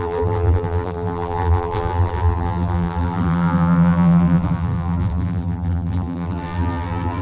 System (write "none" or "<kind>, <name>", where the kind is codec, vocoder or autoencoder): vocoder, BigVGAN v2